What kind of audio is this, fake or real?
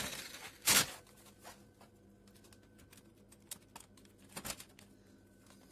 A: real